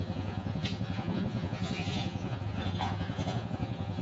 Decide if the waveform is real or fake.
fake